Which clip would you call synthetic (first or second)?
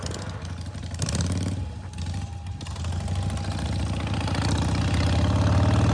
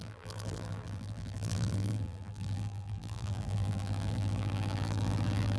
second